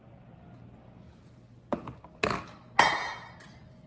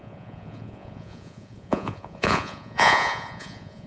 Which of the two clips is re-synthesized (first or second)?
second